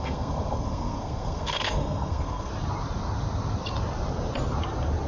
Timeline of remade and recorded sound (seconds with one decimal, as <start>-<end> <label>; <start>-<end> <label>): 0.0-2.5 remade; 2.5-5.1 recorded